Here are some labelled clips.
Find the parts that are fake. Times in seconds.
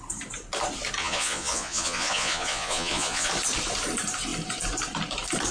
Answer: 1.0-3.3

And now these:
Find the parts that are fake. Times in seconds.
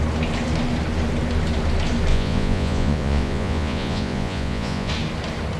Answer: 2.1-4.9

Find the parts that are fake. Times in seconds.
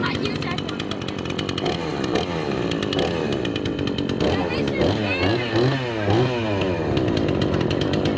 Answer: none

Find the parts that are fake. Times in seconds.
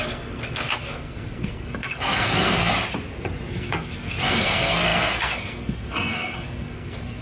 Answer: 0.0-2.7; 3.5-7.2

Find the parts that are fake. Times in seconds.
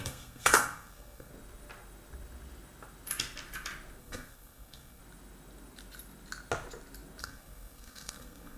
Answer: 0.0-1.3; 4.0-5.0; 7.2-8.6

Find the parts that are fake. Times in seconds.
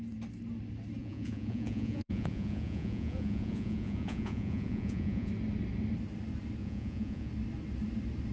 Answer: 1.0-5.3; 6.6-7.3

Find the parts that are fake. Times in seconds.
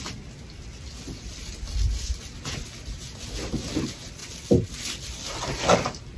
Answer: none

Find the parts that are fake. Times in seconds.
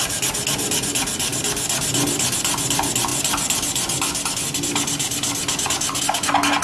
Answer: none